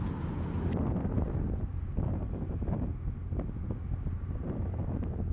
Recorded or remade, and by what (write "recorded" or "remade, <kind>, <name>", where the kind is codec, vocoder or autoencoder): recorded